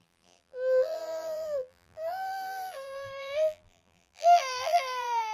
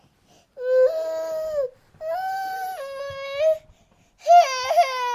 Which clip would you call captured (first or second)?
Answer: second